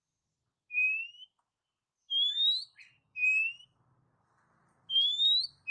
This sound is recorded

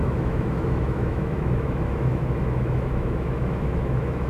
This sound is remade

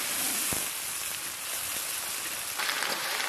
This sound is recorded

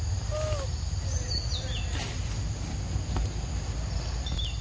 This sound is recorded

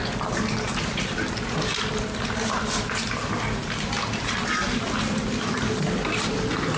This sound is recorded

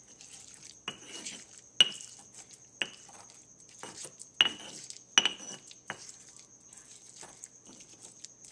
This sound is recorded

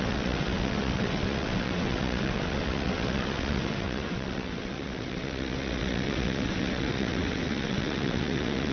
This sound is remade